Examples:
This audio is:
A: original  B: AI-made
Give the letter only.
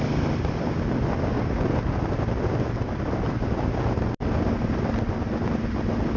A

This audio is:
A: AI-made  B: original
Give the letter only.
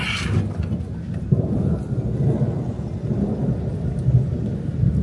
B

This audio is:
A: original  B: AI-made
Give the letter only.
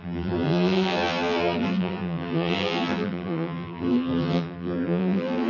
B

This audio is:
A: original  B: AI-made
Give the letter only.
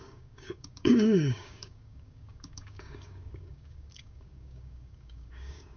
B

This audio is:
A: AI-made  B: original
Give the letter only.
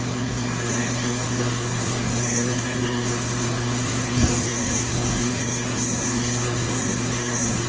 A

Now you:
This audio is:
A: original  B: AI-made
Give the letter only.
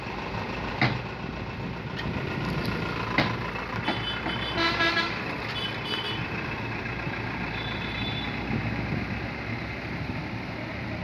A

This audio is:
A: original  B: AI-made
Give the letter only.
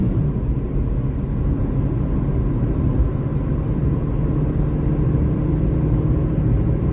A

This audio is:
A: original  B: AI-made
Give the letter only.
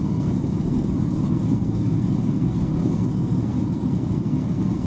B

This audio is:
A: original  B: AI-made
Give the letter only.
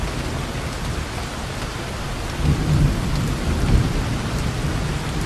A